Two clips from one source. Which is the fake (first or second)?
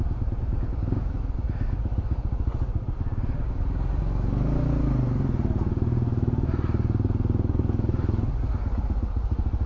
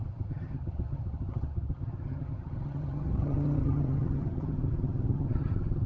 second